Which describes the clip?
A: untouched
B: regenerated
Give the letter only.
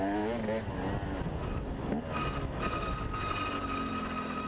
A